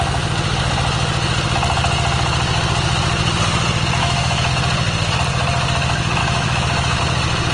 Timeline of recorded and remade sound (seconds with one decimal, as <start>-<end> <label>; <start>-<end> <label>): 0.0-4.0 recorded; 4.0-4.5 remade; 4.5-6.2 recorded; 6.2-7.0 remade; 7.0-7.5 recorded